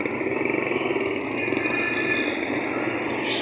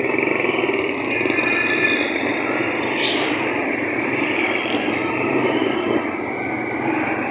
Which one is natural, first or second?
first